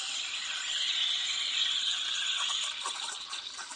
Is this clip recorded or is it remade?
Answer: recorded